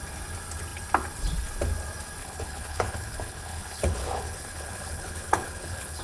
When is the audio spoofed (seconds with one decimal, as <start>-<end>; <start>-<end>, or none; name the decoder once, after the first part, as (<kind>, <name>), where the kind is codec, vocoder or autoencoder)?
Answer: 2.2-6.0 (codec, HILCodec)